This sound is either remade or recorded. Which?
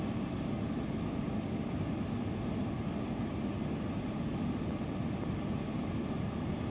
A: recorded